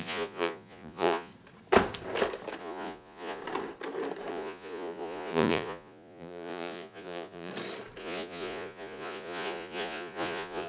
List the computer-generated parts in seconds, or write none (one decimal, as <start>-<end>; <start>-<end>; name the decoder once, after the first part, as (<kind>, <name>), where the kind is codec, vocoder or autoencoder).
0.0-1.3 (vocoder, Vocos); 2.6-3.4; 4.3-7.5; 8.0-10.7